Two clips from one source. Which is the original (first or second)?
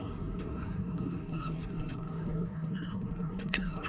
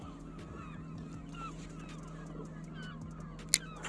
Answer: second